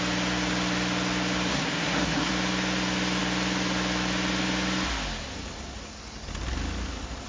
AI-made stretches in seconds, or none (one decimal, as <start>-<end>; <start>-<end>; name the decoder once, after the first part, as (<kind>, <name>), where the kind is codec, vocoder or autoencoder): 1.5-2.3 (codec, SNAC)